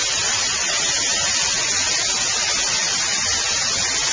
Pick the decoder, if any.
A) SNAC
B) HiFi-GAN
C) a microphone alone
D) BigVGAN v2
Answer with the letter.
C